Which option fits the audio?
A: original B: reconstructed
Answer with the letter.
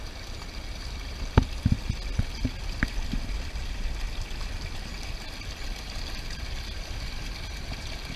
A